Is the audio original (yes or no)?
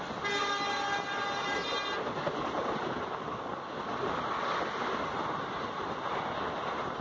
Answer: yes